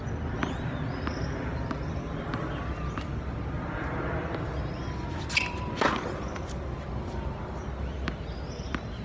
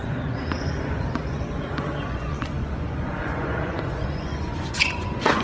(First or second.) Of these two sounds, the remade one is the second